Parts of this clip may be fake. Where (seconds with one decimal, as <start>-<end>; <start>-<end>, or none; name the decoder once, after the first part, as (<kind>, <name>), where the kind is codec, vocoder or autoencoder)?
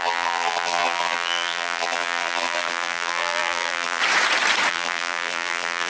0.0-4.0 (vocoder, BigVGAN v2); 4.7-5.9